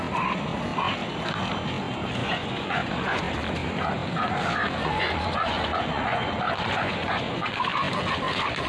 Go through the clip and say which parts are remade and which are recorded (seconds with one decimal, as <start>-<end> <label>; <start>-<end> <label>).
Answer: 0.0-2.2 recorded; 2.2-3.2 remade; 3.2-4.8 recorded; 4.8-7.6 remade; 7.6-8.7 recorded